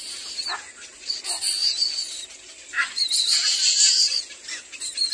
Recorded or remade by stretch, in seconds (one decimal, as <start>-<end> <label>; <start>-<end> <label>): 0.0-5.1 recorded